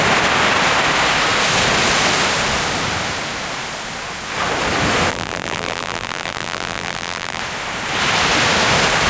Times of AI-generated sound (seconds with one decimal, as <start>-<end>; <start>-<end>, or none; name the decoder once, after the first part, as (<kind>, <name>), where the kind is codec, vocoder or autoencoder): 5.1-7.4 (vocoder, BigVGAN v2)